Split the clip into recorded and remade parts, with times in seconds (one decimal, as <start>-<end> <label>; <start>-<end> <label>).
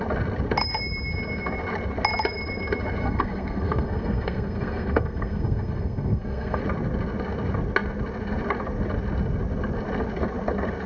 0.0-3.0 recorded; 3.0-6.6 remade; 6.6-10.9 recorded